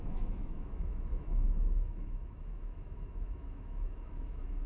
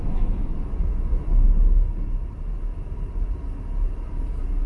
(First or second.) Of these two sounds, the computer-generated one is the first